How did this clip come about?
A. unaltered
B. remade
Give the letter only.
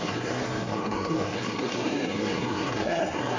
B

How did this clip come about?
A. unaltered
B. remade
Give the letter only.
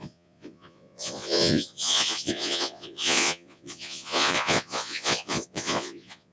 B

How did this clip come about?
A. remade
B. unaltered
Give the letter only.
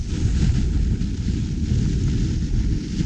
B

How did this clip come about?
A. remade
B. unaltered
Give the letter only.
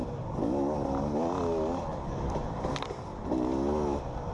B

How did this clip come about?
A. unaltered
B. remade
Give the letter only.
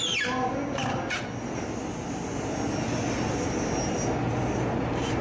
A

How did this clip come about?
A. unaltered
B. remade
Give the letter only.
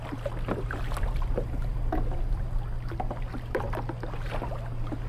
A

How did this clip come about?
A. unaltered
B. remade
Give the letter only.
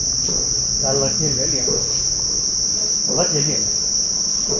A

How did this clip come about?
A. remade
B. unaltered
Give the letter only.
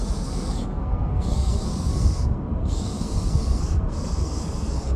A